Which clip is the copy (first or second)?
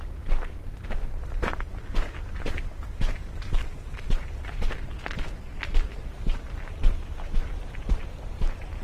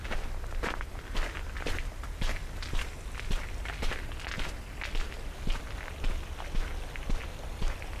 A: first